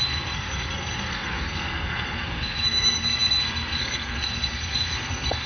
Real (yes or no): no